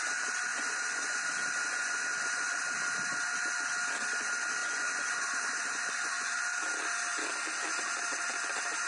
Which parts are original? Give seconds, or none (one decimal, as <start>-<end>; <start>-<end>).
0.0-0.5; 1.2-1.6; 2.6-4.6; 6.4-8.9